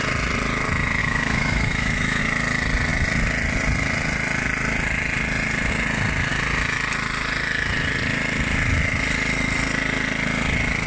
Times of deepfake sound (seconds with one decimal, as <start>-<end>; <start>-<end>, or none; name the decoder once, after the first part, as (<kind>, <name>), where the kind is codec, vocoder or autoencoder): 1.0-2.2 (autoencoder, DAC-VAE)